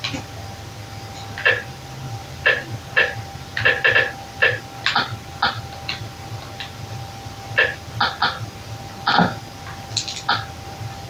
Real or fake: real